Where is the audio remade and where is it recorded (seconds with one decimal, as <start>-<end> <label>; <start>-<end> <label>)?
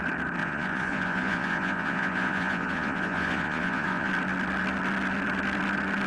0.0-0.4 recorded; 0.4-4.1 remade; 4.1-6.1 recorded